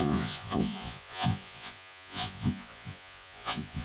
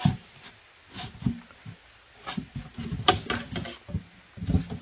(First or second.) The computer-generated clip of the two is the first